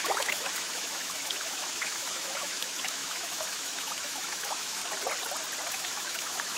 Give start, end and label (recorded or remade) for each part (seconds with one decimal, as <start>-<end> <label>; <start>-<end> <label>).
0.0-4.8 remade; 4.8-5.7 recorded; 5.7-6.6 remade